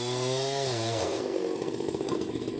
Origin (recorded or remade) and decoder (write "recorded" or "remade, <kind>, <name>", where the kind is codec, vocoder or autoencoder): remade, codec, SNAC